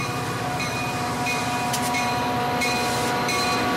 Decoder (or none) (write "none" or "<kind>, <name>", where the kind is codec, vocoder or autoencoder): none